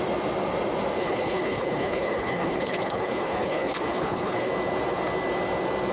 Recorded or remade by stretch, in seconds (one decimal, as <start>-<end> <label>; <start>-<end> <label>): 0.0-1.0 recorded; 1.0-4.5 remade; 4.5-5.9 recorded